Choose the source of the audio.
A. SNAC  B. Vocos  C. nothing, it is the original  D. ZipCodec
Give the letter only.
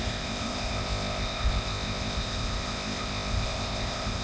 D